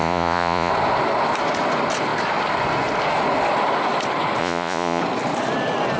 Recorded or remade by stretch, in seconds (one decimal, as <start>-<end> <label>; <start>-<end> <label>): 0.0-0.7 remade; 0.7-4.4 recorded; 4.4-5.0 remade; 5.0-6.0 recorded